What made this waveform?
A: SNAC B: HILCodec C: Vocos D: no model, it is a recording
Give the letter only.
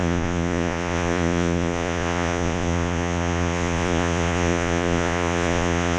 C